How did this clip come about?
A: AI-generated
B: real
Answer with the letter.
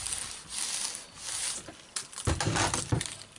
B